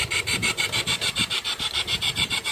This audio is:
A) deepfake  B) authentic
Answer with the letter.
A